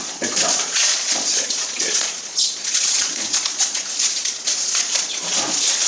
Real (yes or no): no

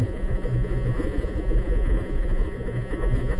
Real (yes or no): no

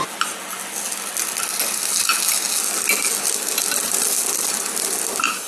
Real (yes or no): yes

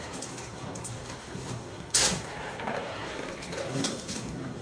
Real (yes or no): no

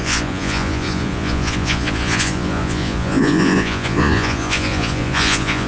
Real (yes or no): no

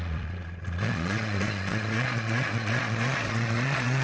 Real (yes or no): no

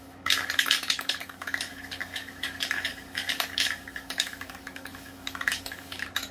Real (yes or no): no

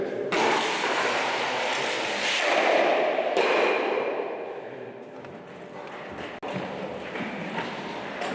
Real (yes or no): yes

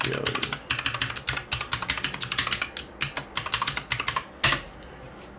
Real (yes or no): yes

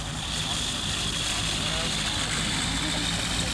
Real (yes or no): yes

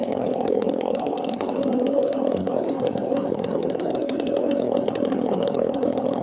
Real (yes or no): no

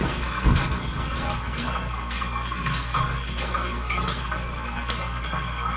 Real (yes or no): no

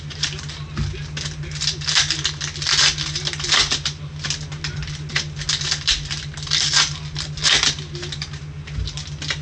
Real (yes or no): yes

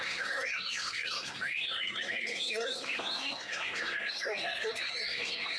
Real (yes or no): no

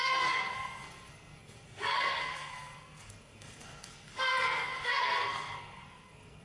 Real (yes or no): no